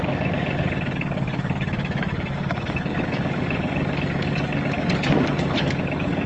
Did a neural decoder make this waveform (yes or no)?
yes